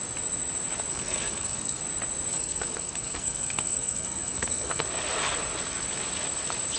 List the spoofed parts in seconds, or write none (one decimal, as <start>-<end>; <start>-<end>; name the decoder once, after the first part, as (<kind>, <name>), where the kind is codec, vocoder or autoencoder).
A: 0.9-1.8 (codec, SNAC); 2.3-4.8